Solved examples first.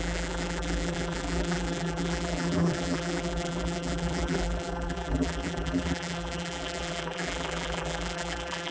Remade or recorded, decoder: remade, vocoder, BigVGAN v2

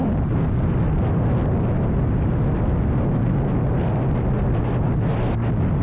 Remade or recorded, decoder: recorded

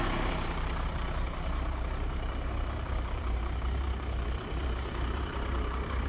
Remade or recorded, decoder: remade, vocoder, BigVGAN v2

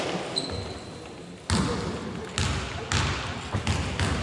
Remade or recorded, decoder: recorded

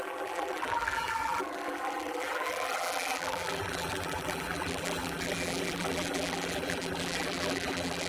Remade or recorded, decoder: remade, vocoder, BigVGAN v2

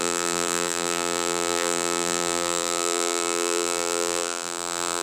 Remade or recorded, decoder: remade, vocoder, BigVGAN v2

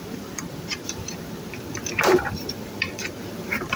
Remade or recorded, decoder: remade, vocoder, BigVGAN v2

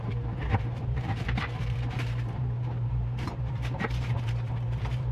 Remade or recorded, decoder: remade, vocoder, BigVGAN v2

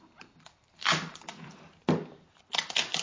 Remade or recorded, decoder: remade, vocoder, BigVGAN v2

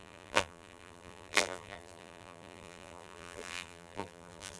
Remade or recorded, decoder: remade, vocoder, BigVGAN v2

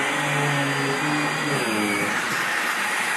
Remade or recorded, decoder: recorded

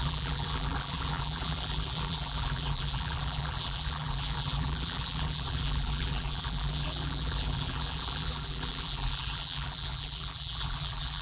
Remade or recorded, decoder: remade, vocoder, BigVGAN v2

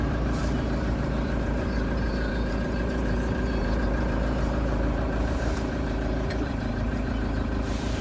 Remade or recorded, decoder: remade, vocoder, BigVGAN v2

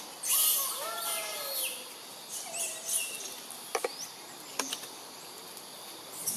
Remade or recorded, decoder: recorded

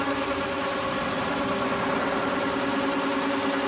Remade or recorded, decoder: recorded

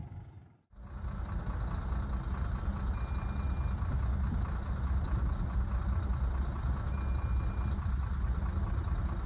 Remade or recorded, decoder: recorded